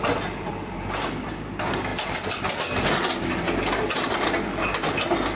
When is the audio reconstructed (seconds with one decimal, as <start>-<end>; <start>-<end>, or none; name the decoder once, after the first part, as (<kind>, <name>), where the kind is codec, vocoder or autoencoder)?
none